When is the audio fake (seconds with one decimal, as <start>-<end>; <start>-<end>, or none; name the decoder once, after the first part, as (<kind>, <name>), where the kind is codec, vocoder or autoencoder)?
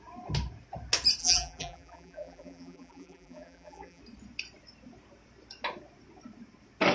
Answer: 1.2-4.0 (vocoder, BigVGAN v2)